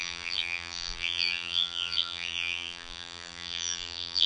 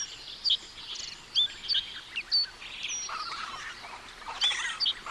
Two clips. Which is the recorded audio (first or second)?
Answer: second